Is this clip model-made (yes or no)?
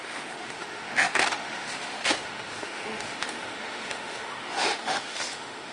yes